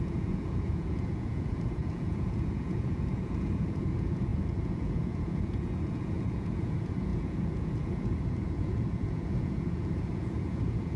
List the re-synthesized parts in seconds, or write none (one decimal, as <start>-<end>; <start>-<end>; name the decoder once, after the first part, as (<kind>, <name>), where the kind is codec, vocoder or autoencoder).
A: 0.0-11.0 (vocoder, Vocos)